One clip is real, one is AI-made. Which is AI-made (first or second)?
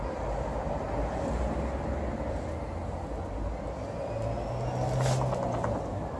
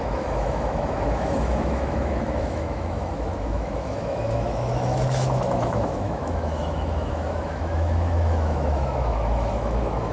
second